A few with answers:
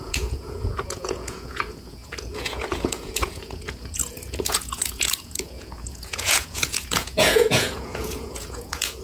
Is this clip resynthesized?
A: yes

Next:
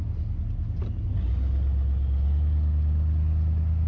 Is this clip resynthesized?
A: no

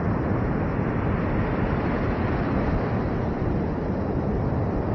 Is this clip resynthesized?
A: no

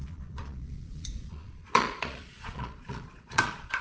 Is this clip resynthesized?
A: yes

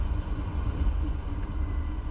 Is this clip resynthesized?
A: yes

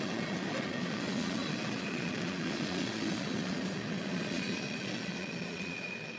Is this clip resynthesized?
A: yes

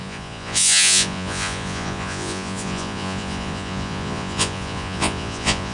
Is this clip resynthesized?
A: yes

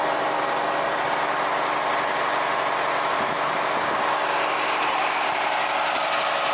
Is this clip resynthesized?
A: no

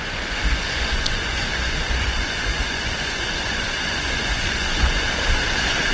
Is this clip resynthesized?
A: yes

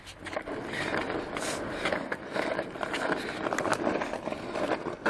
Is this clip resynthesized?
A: no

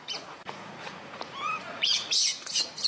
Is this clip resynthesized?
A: yes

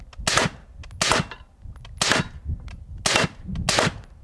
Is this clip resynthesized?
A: no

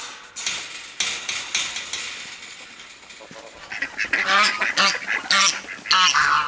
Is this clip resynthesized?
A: no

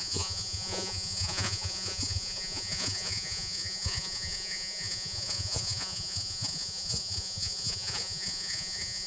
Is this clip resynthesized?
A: yes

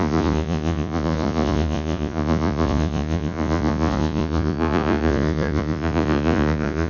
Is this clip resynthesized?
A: yes